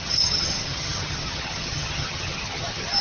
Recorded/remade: remade